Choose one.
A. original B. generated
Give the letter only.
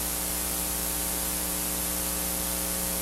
A